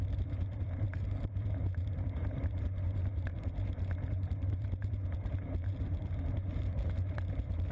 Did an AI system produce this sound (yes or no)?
yes